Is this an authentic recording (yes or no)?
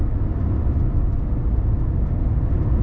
yes